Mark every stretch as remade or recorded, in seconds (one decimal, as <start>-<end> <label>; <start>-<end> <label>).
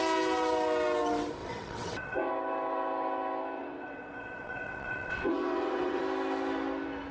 0.0-1.4 recorded; 1.4-2.3 remade; 2.3-3.6 recorded; 3.6-6.0 remade; 6.0-7.1 recorded